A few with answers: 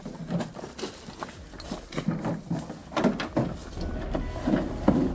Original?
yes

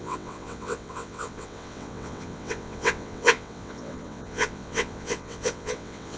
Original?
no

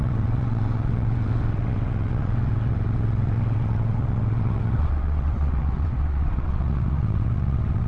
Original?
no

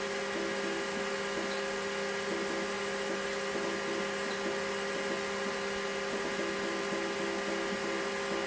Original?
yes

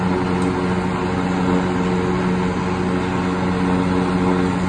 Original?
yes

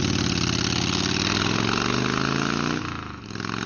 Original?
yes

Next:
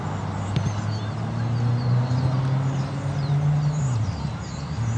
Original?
yes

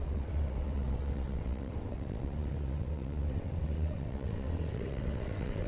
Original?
no